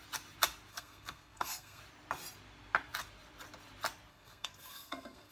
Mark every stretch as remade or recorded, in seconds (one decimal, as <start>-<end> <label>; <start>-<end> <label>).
0.0-0.7 recorded; 0.7-1.8 remade; 1.8-4.1 recorded; 4.1-5.3 remade